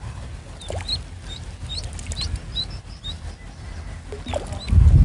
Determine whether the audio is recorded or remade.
recorded